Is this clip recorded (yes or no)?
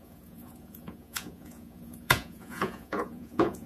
no